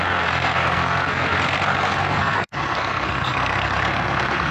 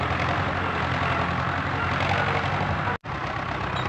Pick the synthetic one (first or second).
first